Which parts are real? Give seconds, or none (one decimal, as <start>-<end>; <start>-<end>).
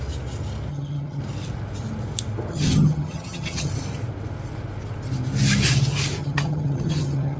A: 0.0-0.7; 1.2-2.5; 3.7-6.2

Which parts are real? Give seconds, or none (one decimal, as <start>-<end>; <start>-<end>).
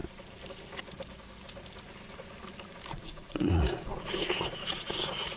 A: 0.0-2.9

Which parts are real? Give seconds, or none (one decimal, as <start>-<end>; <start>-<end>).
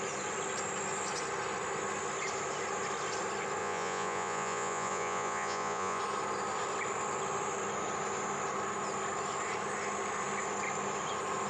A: 0.0-3.6; 6.0-11.5